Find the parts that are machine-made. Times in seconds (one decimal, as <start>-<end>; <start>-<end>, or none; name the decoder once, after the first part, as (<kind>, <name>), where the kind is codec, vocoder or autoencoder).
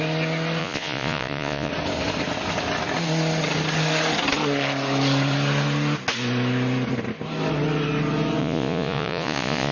0.6-1.7 (vocoder, Vocos); 8.4-9.7